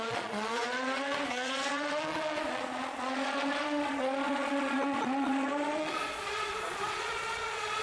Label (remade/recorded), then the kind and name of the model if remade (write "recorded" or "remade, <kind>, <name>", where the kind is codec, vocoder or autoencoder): remade, vocoder, Vocos